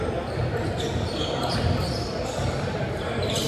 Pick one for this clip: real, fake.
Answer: real